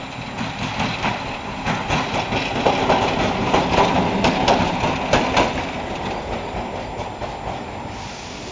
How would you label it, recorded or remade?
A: recorded